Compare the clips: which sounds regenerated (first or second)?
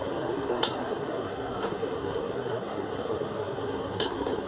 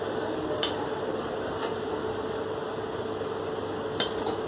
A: first